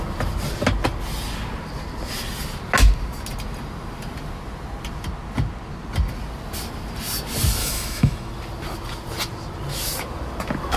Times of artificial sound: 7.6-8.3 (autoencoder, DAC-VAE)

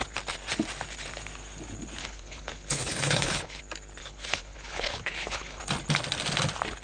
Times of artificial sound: 2.0-3.6 (codec, HILCodec); 4.0-5.6

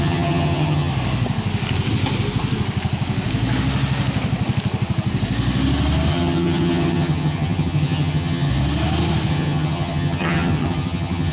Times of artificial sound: 0.0-0.9 (vocoder, HiFi-GAN); 6.1-8.5; 9.3-11.3

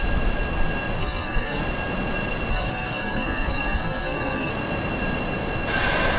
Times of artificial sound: 1.0-1.6 (codec, SNAC); 2.5-4.5

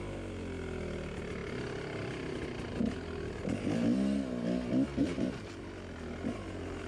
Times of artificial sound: 5.0-5.5 (vocoder, BigVGAN v2)

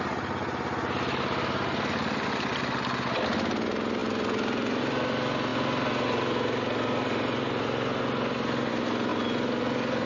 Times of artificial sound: none